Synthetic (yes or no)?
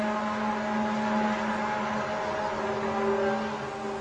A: no